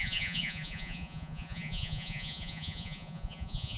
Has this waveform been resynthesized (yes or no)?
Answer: yes